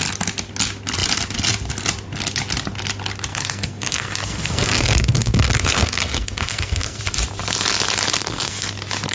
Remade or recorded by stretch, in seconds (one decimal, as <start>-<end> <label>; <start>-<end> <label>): 0.0-3.3 recorded; 3.3-7.0 remade; 7.0-8.2 recorded; 8.2-8.7 remade; 8.7-9.1 recorded